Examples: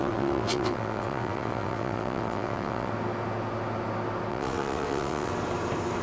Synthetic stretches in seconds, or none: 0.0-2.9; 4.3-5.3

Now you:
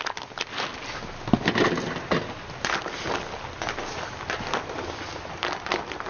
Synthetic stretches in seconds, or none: none

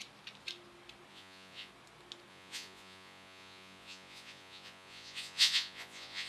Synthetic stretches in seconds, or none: 1.1-1.7; 2.3-6.3